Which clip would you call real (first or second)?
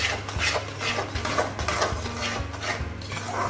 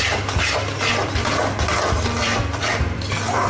first